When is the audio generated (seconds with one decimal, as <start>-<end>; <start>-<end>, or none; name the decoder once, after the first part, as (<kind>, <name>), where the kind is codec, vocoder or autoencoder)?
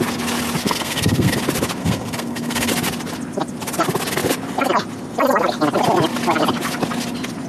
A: 0.6-1.4 (codec, SNAC); 1.8-2.7